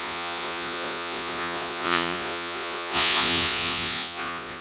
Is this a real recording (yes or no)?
no